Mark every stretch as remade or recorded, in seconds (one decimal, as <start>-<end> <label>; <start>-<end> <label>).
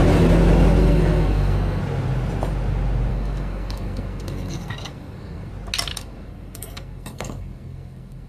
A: 0.0-0.8 recorded; 0.8-1.8 remade; 1.8-3.1 recorded; 3.1-5.5 remade; 5.5-5.9 recorded; 5.9-8.3 remade